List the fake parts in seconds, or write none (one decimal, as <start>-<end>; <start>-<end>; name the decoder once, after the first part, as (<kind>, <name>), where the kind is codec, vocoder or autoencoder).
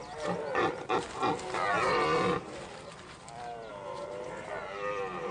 2.4-5.3 (vocoder, BigVGAN v2)